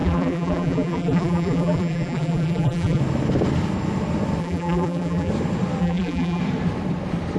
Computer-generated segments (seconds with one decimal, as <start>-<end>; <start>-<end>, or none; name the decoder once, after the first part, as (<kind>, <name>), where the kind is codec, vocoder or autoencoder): 0.0-3.0 (vocoder, BigVGAN v2); 4.4-5.3; 5.8-6.4